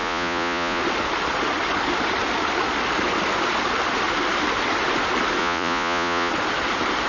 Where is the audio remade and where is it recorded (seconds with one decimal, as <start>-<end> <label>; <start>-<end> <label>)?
0.0-0.8 remade; 0.8-5.4 recorded; 5.4-6.3 remade; 6.3-7.1 recorded